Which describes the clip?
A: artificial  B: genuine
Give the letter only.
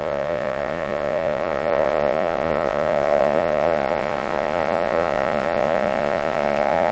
A